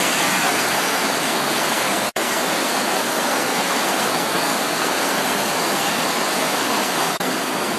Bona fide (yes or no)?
no